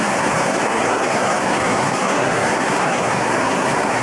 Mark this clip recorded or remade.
remade